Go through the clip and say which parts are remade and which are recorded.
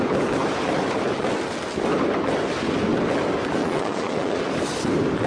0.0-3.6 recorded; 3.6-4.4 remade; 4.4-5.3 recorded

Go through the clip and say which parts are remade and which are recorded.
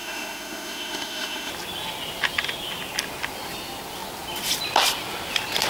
0.0-1.5 remade; 1.5-5.7 recorded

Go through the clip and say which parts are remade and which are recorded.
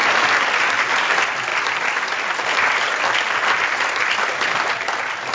0.0-5.3 recorded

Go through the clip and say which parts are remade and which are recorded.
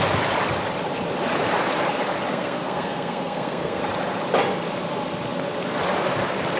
0.0-2.3 recorded; 2.3-3.8 remade; 3.8-6.6 recorded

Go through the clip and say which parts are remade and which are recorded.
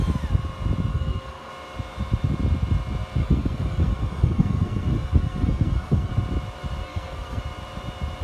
0.0-0.9 recorded; 0.9-1.5 remade; 1.5-3.2 recorded; 3.2-6.1 remade; 6.1-6.8 recorded; 6.8-7.4 remade; 7.4-8.2 recorded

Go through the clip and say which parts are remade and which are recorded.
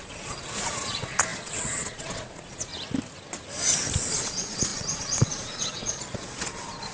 0.0-2.7 remade; 2.7-3.9 recorded; 3.9-6.9 remade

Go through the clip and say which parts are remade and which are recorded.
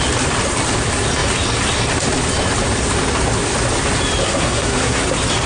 0.0-4.2 recorded; 4.2-5.0 remade; 5.0-5.5 recorded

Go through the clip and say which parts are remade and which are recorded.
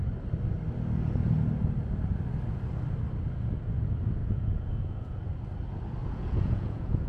0.0-4.2 recorded; 4.2-5.2 remade; 5.2-6.0 recorded; 6.0-7.1 remade